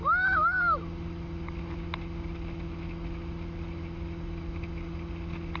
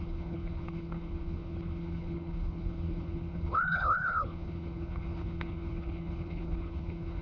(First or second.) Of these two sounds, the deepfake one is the second